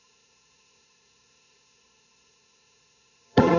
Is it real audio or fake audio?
fake